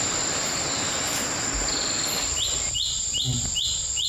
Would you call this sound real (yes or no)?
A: yes